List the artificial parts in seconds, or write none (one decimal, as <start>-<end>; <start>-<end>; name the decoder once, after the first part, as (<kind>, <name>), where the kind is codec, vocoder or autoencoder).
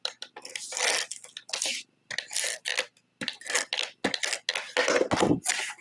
none